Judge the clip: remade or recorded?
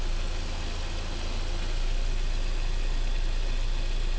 recorded